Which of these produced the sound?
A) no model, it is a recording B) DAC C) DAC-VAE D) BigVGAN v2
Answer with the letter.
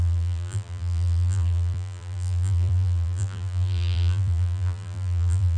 D